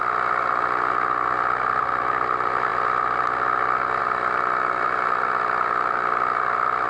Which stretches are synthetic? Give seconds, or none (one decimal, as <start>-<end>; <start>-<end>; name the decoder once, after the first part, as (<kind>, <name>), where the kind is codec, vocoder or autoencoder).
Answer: none